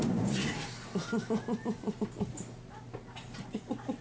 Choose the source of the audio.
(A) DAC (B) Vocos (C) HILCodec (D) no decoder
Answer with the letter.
D